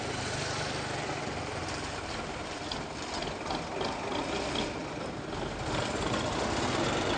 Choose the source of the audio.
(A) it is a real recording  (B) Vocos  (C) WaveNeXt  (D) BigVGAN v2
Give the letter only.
A